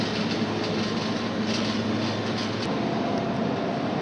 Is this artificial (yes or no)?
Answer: no